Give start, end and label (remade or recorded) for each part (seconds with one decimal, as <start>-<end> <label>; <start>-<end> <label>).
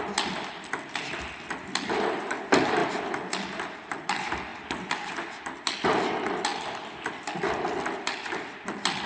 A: 0.0-9.1 recorded